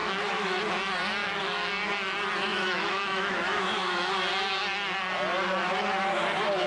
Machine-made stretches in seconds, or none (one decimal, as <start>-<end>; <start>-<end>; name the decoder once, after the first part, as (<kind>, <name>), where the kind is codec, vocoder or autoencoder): 0.0-0.6 (autoencoder, DAC-VAE); 1.2-1.7; 2.5-4.1